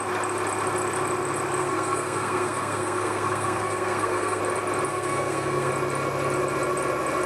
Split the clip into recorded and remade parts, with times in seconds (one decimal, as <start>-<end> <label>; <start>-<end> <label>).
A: 0.0-1.6 recorded; 1.6-4.4 remade; 4.4-4.9 recorded; 4.9-5.7 remade; 5.7-7.3 recorded